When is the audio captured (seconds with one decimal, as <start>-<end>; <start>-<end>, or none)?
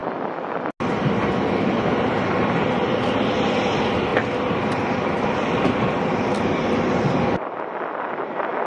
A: 0.0-8.7